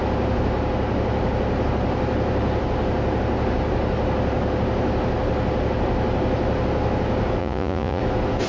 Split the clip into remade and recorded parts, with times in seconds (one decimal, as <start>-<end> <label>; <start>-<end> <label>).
0.0-7.4 recorded; 7.4-8.0 remade; 8.0-8.5 recorded